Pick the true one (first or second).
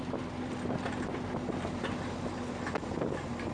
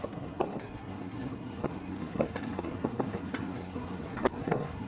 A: first